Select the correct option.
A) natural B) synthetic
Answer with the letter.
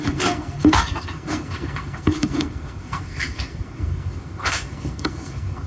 B